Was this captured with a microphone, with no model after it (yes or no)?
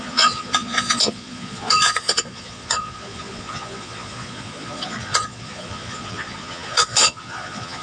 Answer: no